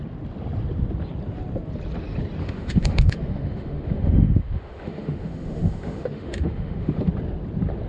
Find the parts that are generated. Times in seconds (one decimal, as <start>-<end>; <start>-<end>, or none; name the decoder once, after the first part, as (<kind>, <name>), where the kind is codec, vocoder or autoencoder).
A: 2.4-7.1 (autoencoder, DAC-VAE)